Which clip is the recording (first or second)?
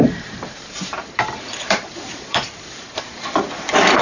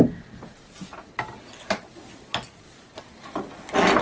second